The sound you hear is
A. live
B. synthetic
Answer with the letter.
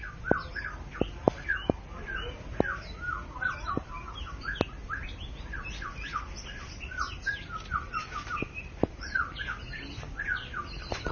A